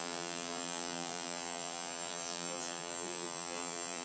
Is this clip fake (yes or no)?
yes